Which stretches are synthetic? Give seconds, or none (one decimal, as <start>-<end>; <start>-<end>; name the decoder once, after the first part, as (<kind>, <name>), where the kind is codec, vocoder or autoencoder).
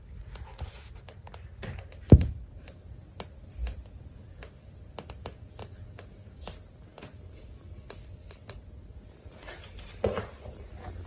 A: none